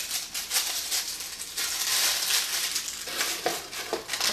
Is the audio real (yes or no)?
yes